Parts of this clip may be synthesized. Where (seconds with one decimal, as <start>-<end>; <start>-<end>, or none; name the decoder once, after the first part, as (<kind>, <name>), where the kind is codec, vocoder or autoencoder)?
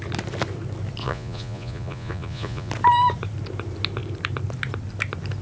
1.0-2.7 (vocoder, Vocos)